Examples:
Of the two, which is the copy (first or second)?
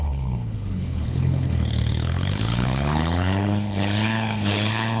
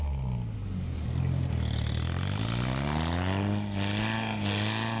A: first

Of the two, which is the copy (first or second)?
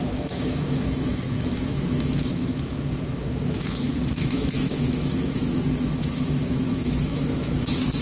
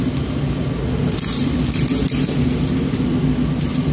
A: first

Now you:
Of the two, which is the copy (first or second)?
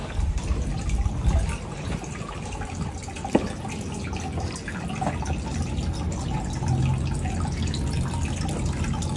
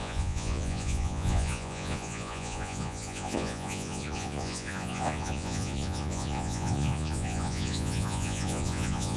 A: second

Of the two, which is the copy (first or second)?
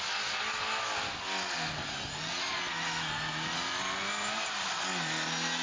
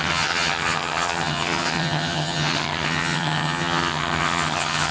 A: second